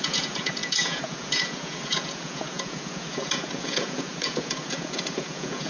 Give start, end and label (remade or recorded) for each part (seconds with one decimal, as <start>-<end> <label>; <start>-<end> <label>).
0.0-5.7 remade